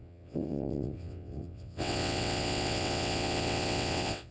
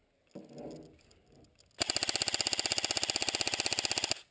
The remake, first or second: first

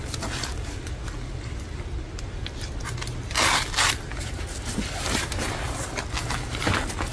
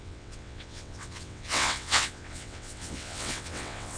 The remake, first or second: second